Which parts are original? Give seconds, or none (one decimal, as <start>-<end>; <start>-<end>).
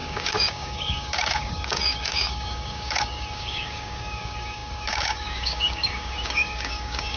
none